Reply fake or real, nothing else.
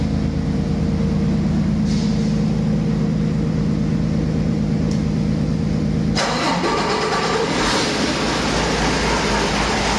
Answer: real